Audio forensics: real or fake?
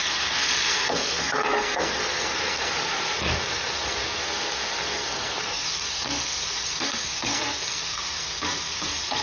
fake